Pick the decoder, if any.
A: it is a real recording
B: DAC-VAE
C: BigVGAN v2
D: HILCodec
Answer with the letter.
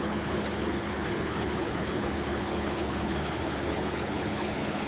D